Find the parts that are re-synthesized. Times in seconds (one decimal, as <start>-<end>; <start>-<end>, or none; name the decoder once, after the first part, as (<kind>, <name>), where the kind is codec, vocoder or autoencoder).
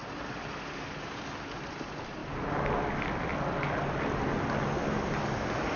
none